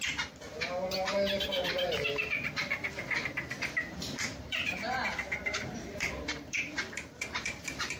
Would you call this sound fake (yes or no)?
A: yes